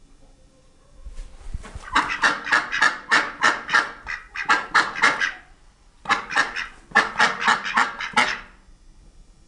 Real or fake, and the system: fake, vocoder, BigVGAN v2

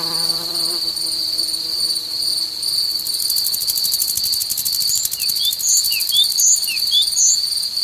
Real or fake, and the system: fake, vocoder, BigVGAN v2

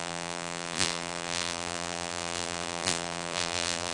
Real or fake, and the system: fake, vocoder, BigVGAN v2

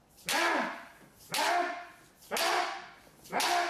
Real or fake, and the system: real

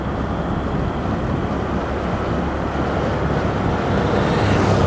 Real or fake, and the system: real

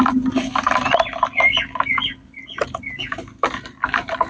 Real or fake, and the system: fake, vocoder, BigVGAN v2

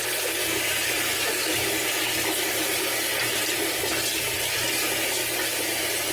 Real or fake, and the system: real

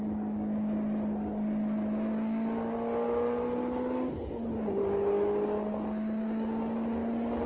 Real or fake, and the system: real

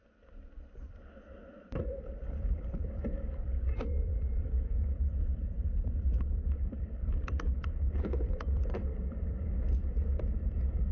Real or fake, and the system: fake, vocoder, BigVGAN v2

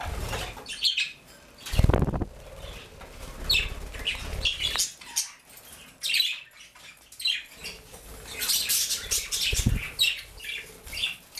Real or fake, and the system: real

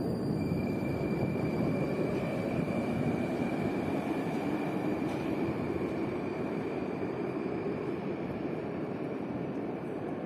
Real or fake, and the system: fake, vocoder, BigVGAN v2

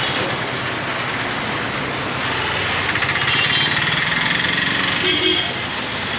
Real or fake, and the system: real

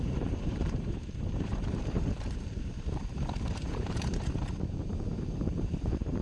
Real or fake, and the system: fake, vocoder, BigVGAN v2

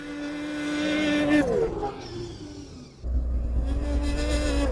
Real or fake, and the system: real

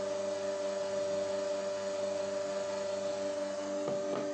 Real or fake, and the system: real